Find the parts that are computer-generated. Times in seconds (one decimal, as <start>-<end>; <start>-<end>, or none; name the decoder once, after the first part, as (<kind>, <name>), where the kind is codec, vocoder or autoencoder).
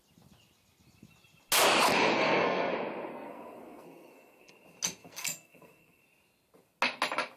2.1-2.7 (codec, SNAC); 3.1-4.5; 5.0-6.0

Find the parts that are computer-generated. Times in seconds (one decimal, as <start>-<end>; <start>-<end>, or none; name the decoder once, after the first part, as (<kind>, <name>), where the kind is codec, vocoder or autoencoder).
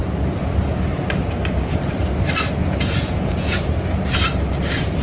2.6-3.6 (vocoder, Vocos)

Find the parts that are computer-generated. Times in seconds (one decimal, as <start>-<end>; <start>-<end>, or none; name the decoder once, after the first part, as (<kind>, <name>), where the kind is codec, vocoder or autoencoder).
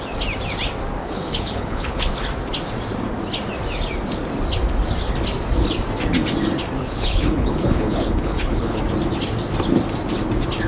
1.0-2.1 (codec, HILCodec); 6.8-8.8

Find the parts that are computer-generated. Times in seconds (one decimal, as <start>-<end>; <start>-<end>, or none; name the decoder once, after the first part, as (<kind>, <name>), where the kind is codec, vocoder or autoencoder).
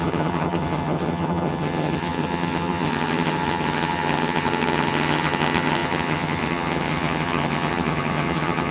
0.0-8.7 (vocoder, HiFi-GAN)